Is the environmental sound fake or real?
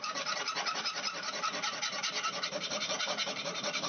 fake